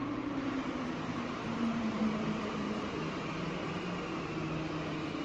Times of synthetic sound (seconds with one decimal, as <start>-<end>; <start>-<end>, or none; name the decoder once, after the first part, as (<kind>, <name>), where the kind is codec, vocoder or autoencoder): 0.0-2.0 (vocoder, BigVGAN v2)